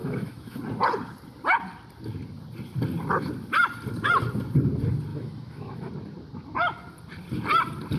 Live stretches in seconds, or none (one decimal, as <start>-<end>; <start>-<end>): 0.6-5.1; 5.9-8.0